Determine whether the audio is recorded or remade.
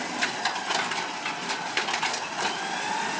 recorded